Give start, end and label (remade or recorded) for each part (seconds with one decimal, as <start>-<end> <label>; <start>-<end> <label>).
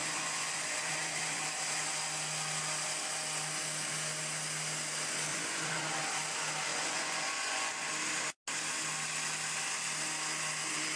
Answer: 0.0-1.4 remade; 1.4-5.3 recorded; 5.3-5.9 remade; 5.9-6.7 recorded; 6.7-7.9 remade; 7.9-11.0 recorded